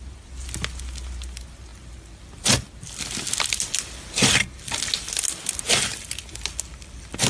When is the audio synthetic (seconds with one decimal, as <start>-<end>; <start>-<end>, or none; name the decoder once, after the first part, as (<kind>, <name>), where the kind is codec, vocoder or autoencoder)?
none